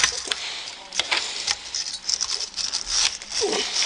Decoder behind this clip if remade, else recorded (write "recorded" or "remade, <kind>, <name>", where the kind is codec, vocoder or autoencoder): recorded